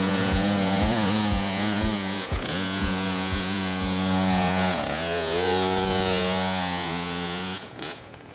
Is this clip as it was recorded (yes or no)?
no